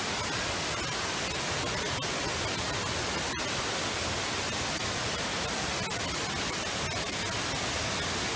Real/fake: real